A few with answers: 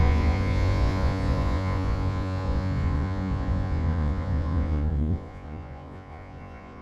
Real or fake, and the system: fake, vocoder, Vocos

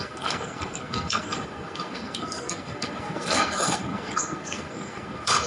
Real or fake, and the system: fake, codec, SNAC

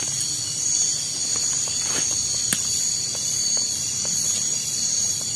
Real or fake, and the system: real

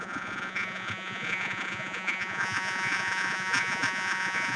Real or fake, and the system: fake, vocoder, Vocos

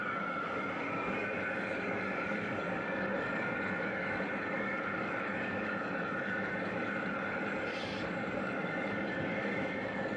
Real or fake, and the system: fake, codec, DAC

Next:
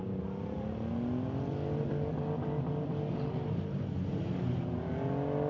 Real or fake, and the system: real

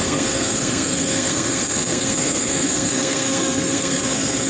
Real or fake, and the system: fake, codec, SNAC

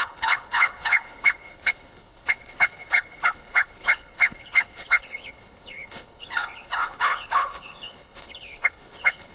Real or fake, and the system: fake, codec, HILCodec